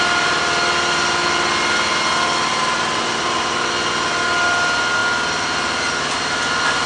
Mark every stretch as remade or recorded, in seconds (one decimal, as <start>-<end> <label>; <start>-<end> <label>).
0.0-2.5 recorded; 2.5-3.5 remade; 3.5-6.9 recorded